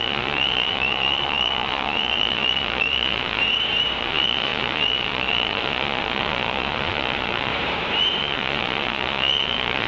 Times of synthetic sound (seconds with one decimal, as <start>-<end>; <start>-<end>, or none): 0.0-3.4; 4.0-7.5; 8.2-9.9